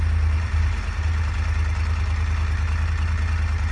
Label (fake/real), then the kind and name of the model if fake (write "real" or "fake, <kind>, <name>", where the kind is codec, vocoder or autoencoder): real